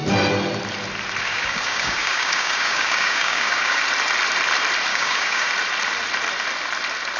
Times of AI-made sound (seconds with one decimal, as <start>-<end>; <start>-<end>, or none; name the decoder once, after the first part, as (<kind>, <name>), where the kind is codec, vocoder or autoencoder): 1.3-3.8 (codec, DAC); 4.9-5.5